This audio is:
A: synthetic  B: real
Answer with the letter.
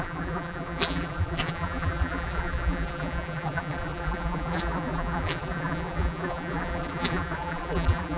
A